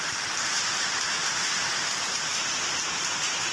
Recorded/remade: remade